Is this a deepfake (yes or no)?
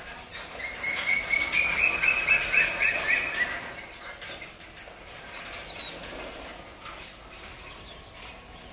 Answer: no